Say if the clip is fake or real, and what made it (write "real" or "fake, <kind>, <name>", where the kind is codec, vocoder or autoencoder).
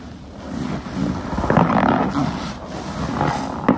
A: real